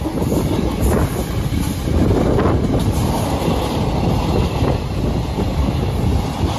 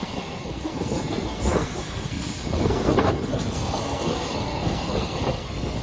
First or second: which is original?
first